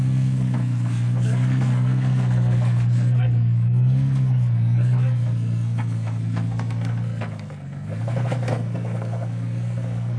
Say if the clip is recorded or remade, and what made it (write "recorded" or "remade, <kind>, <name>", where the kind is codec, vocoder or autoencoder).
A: remade, codec, SNAC